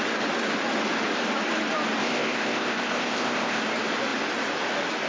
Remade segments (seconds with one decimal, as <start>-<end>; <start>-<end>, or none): 2.0-3.6

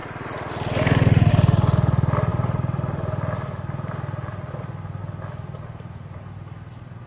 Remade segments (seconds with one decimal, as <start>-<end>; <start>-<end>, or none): none

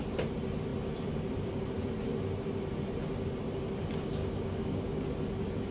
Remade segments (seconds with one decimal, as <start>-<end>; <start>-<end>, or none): 4.2-5.1

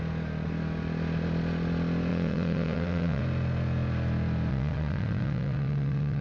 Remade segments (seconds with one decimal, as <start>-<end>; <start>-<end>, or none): 2.1-3.2; 4.5-6.2

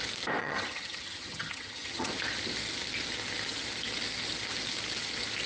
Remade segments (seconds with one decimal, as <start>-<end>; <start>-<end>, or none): 0.4-2.1

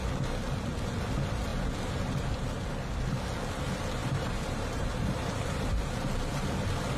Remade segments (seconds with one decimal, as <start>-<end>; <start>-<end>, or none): 4.0-5.9

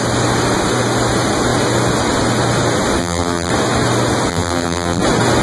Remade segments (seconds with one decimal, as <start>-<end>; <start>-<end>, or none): 3.0-3.5; 4.3-5.0

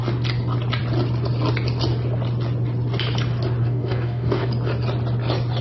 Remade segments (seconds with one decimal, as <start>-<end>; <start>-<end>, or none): 3.6-4.5